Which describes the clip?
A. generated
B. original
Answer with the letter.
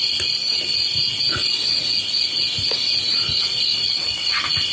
B